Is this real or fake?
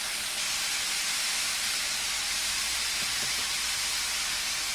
real